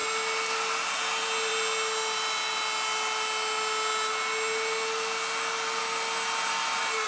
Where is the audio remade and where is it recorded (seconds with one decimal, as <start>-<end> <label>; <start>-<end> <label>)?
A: 0.0-7.1 recorded